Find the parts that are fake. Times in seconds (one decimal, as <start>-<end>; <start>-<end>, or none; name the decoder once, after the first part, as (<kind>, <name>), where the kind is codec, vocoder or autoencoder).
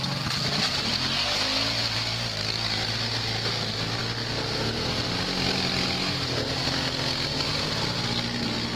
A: none